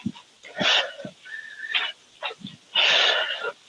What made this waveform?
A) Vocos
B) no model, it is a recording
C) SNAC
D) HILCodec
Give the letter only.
B